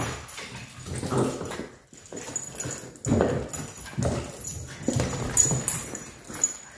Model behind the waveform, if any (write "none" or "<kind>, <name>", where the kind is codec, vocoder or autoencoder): none